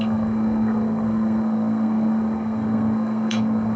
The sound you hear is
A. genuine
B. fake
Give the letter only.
B